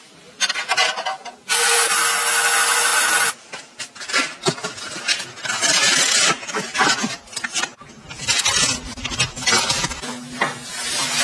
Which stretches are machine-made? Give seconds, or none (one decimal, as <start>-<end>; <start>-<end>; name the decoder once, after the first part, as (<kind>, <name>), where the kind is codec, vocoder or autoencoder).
2.9-3.6 (vocoder, BigVGAN v2)